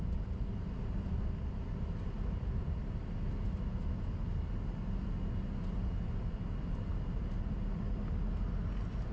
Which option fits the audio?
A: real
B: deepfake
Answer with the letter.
A